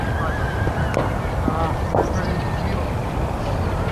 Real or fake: fake